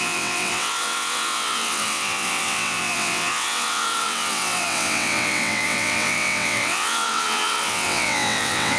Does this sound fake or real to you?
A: fake